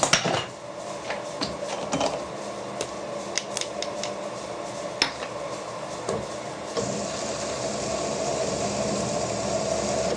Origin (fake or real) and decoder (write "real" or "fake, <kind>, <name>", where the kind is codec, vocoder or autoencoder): real